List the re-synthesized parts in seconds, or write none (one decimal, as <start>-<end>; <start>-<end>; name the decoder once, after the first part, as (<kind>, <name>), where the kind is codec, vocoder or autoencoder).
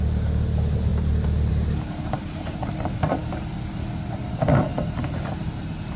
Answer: none